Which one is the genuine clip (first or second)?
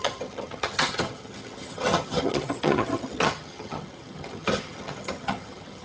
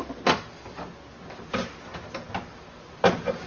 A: second